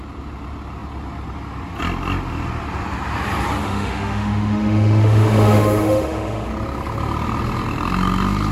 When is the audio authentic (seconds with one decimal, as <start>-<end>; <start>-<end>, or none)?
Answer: 0.0-3.6; 6.5-8.5